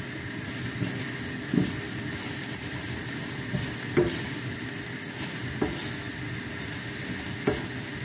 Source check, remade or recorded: recorded